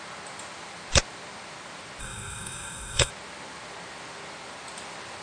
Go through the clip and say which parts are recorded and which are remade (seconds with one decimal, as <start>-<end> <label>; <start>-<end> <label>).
0.0-2.0 recorded; 2.0-3.1 remade; 3.1-5.2 recorded